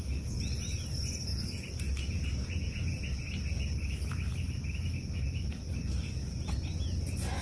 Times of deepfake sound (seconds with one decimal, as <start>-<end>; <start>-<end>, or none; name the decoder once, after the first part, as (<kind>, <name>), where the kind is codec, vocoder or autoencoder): none